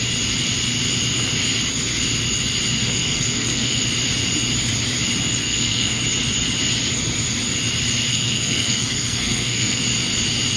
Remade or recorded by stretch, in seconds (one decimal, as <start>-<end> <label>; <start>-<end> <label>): 0.0-2.8 recorded; 2.8-3.8 remade; 3.8-5.4 recorded; 5.4-6.0 remade; 6.0-8.1 recorded; 8.1-9.8 remade; 9.8-10.6 recorded